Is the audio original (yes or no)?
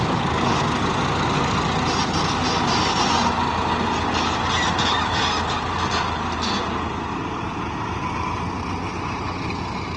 yes